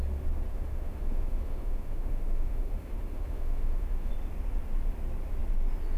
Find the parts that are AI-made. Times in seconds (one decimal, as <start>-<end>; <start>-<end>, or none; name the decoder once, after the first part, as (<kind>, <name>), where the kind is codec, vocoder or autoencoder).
0.5-4.1 (autoencoder, DAC-VAE)